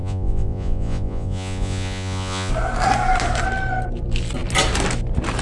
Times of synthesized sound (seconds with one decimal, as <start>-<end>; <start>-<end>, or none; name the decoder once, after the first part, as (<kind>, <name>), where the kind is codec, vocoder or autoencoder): 0.0-2.5 (vocoder, Vocos)